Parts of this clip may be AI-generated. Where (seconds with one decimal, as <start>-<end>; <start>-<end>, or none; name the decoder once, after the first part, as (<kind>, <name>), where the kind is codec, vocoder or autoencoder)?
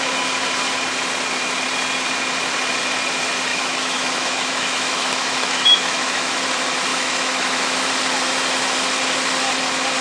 3.5-6.4 (autoencoder, DAC-VAE); 6.9-7.9